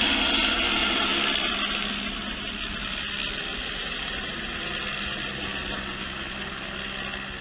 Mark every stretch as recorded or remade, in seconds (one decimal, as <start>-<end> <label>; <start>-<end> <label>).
0.0-7.4 recorded

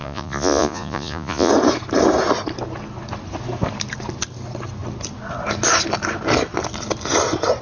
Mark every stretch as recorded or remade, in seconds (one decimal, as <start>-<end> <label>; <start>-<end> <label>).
0.0-1.5 remade; 1.5-7.6 recorded

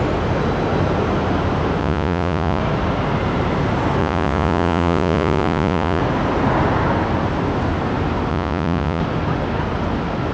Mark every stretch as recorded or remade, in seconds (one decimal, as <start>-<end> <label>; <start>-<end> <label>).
0.0-1.8 recorded; 1.8-2.6 remade; 2.6-4.0 recorded; 4.0-6.0 remade; 6.0-8.3 recorded; 8.3-9.0 remade; 9.0-10.3 recorded

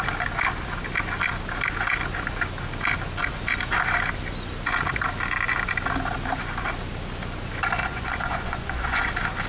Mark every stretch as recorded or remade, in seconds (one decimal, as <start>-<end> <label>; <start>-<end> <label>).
0.0-7.8 recorded; 7.8-9.1 remade; 9.1-9.5 recorded